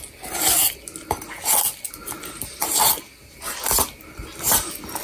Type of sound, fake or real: real